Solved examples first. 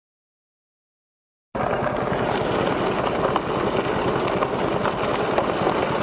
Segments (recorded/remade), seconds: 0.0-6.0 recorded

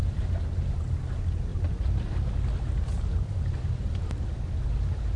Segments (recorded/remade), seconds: 0.0-1.5 recorded; 1.5-3.7 remade; 3.7-5.2 recorded

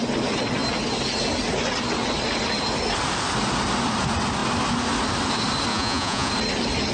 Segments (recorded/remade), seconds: 0.0-5.7 recorded; 5.7-6.3 remade; 6.3-6.9 recorded

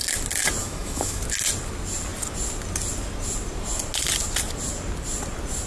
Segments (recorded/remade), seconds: 0.0-0.6 recorded; 0.6-1.2 remade; 1.2-5.7 recorded

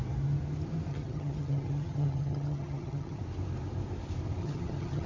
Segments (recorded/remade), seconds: 0.0-0.9 recorded; 0.9-3.2 remade; 3.2-4.4 recorded; 4.4-5.1 remade

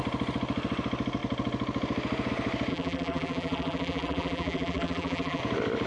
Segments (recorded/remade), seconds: 0.0-2.7 recorded; 2.7-5.4 remade; 5.4-5.9 recorded